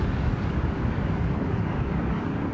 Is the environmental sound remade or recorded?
remade